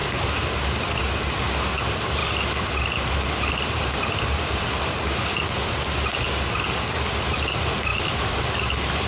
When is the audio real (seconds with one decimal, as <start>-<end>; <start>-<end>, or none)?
0.0-7.9